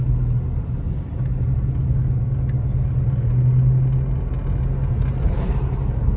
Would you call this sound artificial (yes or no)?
no